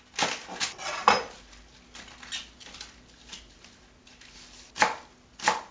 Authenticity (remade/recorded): recorded